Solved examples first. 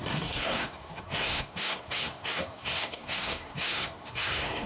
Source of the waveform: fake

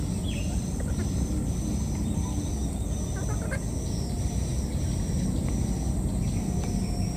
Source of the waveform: real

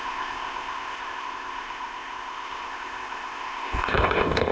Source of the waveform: fake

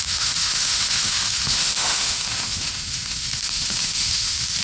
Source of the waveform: fake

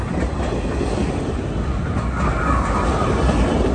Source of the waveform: real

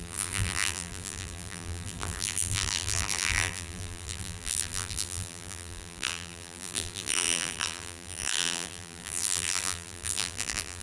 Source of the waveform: fake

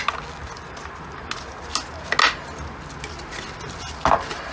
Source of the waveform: real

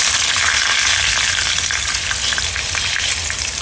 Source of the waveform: real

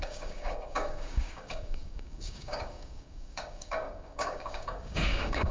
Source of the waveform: fake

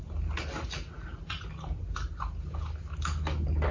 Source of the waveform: real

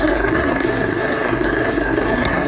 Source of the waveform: fake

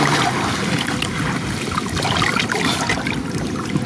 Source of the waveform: real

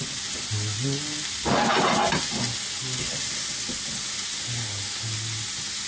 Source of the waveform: real